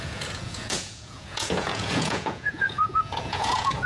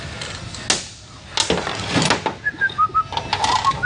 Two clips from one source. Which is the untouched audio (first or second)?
second